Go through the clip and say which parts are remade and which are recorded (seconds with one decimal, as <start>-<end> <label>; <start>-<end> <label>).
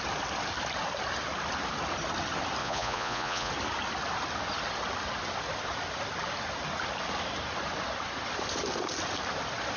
0.0-2.6 recorded; 2.6-3.5 remade; 3.5-9.8 recorded